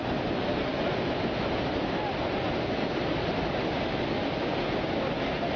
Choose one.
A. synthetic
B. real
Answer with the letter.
B